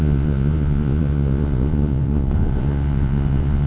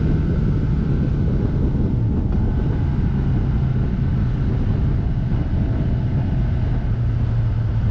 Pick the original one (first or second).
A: second